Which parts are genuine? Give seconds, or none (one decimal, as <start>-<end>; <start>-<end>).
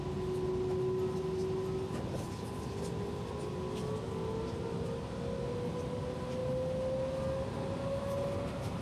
0.0-8.8